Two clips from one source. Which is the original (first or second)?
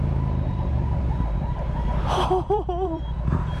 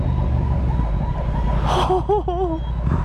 second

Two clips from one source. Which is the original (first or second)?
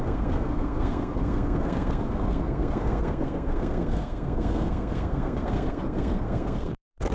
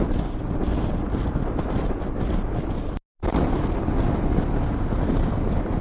second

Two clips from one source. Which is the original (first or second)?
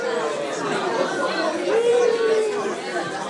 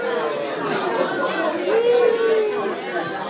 second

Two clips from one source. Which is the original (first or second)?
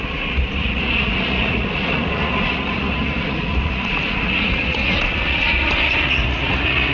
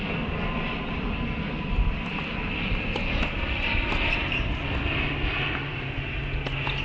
second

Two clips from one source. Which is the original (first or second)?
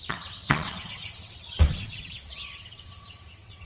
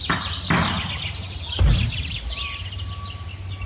second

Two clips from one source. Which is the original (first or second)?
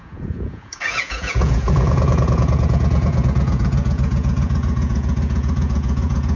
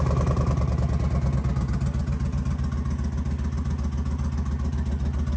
second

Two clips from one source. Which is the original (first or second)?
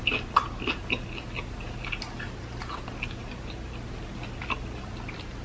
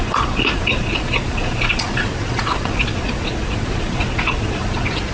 first